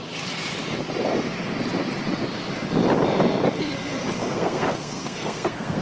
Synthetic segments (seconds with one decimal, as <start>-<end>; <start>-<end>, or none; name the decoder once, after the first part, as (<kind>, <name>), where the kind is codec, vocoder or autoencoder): 4.2-5.8 (codec, SNAC)